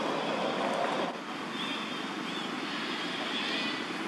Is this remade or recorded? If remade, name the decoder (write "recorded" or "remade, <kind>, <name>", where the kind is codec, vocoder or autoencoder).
recorded